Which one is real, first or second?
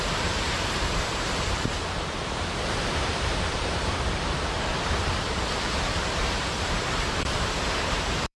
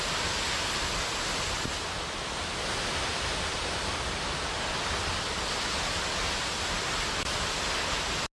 second